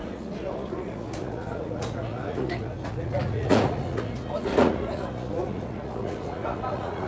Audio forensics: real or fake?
fake